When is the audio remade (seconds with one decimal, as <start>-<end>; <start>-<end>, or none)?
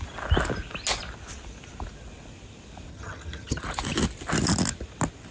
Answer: 2.9-3.6